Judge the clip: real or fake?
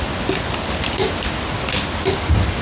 real